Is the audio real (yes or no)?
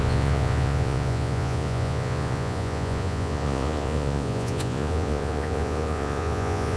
no